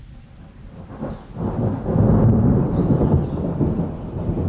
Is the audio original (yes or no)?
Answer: yes